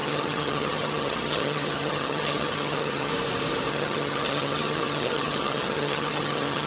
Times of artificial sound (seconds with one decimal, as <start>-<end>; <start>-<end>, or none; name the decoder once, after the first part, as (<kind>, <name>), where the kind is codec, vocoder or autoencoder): 0.0-3.1 (vocoder, HiFi-GAN); 3.7-6.7